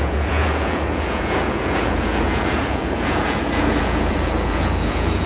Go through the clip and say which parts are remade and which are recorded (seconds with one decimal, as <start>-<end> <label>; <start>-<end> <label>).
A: 0.0-5.3 remade